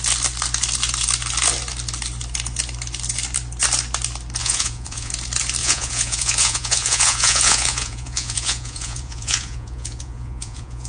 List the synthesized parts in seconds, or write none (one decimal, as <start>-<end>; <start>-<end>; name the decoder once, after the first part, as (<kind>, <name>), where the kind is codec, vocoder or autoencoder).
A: 4.4-5.1 (vocoder, Vocos); 5.6-10.9